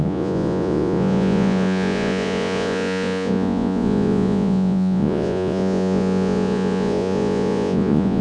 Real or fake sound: fake